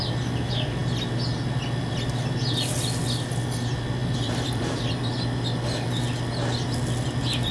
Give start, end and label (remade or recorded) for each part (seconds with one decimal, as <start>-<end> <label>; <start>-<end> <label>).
0.0-4.0 recorded; 4.0-4.9 remade; 4.9-7.5 recorded

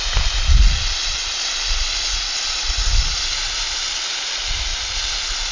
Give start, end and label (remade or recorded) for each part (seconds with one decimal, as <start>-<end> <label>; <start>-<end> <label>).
0.0-5.5 recorded

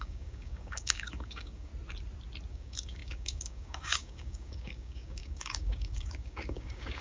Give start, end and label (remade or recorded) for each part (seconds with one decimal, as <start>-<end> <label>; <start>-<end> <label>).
0.0-1.7 remade; 1.7-2.5 recorded; 2.5-7.0 remade

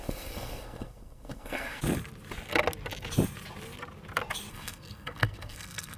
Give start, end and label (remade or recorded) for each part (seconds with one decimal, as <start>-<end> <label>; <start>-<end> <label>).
0.0-1.8 remade; 1.8-4.5 recorded; 4.5-6.0 remade

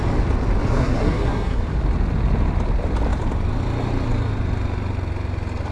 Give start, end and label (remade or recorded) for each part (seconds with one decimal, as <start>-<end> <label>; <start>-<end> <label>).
0.0-0.7 recorded; 0.7-1.6 remade; 1.6-5.7 recorded